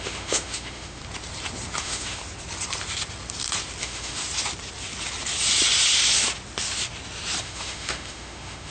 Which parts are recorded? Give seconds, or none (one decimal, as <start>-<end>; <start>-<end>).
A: 1.0-1.8; 2.2-3.8; 4.2-7.4